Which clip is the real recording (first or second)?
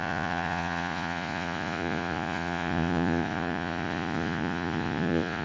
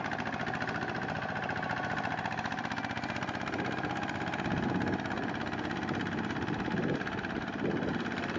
second